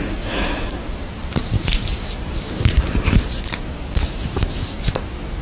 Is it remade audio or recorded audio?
recorded